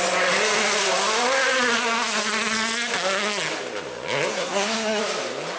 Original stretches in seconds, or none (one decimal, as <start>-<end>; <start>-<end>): 0.0-4.3; 5.0-5.6